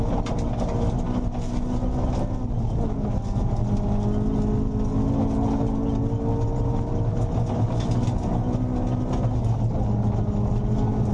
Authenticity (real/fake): real